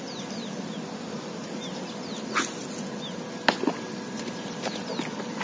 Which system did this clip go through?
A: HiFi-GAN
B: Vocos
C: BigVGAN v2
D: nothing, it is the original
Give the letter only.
D